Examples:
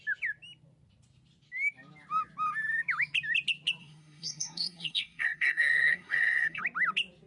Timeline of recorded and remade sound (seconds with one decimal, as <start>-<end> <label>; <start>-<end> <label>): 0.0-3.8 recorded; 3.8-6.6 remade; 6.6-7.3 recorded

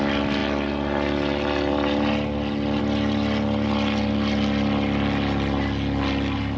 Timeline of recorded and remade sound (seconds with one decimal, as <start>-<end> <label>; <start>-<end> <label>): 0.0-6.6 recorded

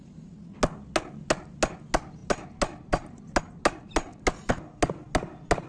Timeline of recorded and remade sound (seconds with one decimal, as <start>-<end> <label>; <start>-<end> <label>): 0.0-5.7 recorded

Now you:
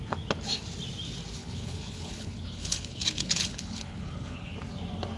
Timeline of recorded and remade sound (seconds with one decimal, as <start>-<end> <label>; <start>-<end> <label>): 0.0-1.4 recorded; 1.4-4.5 remade; 4.5-5.2 recorded

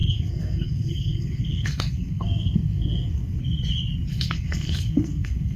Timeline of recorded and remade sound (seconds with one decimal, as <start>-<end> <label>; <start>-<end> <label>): 0.0-3.4 remade; 3.4-4.1 recorded; 4.1-5.6 remade

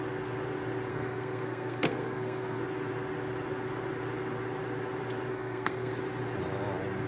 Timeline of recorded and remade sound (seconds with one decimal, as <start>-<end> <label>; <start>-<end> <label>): 0.0-0.9 recorded; 0.9-2.6 remade; 2.6-5.3 recorded; 5.3-5.9 remade; 5.9-7.1 recorded